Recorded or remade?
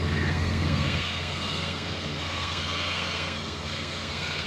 remade